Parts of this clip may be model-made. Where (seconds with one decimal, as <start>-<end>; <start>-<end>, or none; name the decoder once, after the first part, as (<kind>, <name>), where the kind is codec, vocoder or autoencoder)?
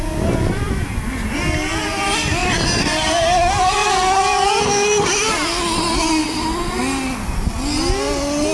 2.4-3.2 (vocoder, BigVGAN v2)